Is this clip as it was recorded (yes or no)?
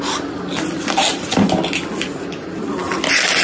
yes